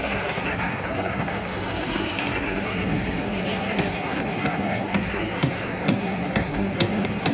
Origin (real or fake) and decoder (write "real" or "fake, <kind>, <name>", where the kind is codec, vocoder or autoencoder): fake, codec, SNAC